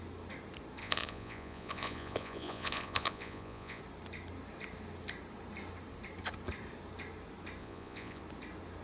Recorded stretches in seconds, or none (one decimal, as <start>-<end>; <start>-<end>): 0.0-0.8; 3.8-7.6; 8.2-8.8

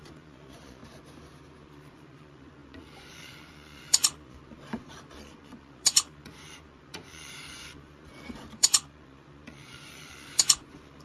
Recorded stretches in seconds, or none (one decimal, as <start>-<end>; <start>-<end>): 0.8-1.6

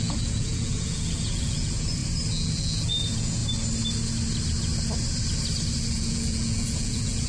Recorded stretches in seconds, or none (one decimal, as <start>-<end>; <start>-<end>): 2.0-2.6; 3.4-5.9

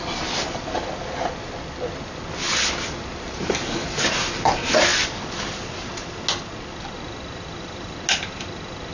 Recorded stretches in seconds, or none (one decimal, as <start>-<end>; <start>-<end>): 0.0-8.9

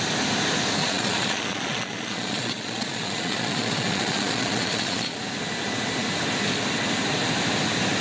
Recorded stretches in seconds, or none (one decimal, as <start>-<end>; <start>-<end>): 0.0-0.8; 5.2-8.0

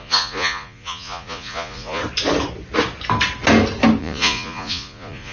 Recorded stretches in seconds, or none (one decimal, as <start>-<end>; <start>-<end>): 2.0-4.0

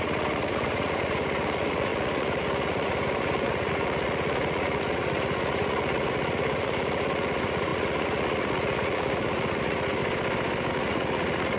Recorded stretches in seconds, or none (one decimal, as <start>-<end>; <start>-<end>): 10.0-10.7